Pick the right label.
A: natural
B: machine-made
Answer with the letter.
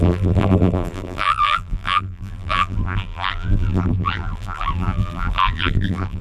B